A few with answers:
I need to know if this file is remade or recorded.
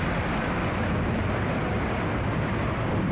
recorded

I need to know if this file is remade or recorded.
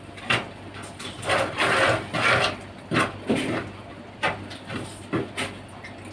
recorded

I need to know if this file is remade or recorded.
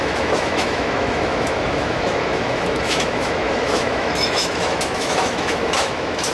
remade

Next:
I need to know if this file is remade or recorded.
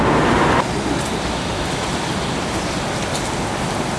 recorded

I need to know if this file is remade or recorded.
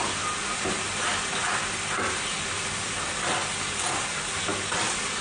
recorded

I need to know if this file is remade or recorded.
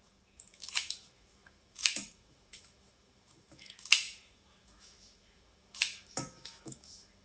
remade